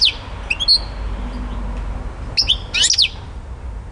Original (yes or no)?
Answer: yes